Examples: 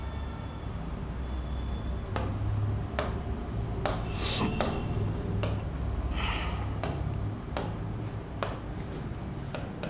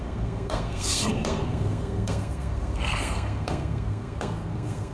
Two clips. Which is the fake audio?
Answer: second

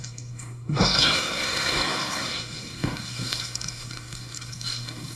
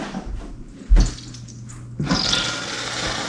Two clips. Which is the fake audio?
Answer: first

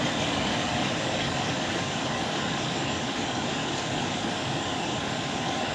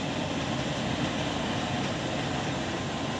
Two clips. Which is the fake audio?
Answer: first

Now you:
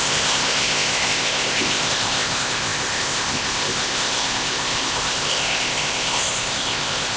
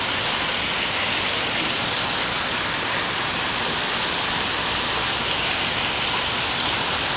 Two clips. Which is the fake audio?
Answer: first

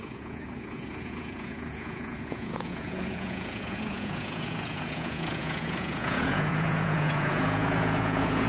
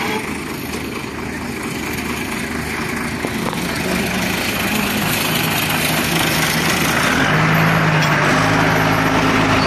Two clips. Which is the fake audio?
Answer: first